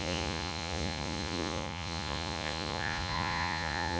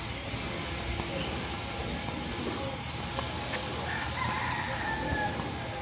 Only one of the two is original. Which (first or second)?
second